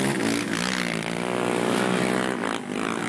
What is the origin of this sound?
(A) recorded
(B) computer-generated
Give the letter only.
A